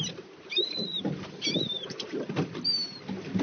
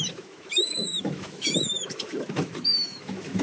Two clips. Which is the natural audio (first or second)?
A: first